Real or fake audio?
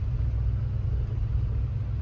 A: real